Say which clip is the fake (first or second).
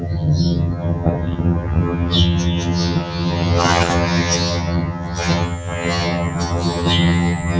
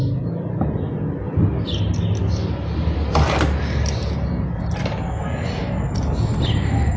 first